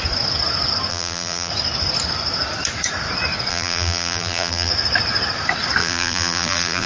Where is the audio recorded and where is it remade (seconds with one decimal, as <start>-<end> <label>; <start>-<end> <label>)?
0.0-0.9 recorded; 0.9-1.5 remade; 1.5-3.5 recorded; 3.5-4.7 remade; 4.7-5.8 recorded; 5.8-6.9 remade